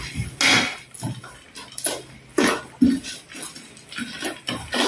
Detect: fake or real real